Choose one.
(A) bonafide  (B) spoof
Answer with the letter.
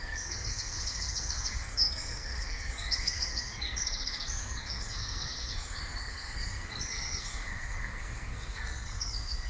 B